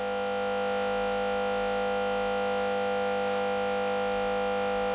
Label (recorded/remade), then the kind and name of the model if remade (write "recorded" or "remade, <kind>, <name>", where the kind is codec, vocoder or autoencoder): recorded